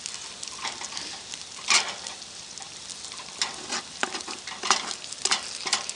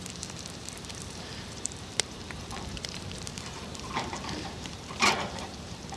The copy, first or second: second